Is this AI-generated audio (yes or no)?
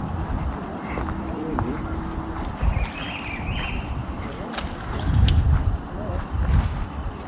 no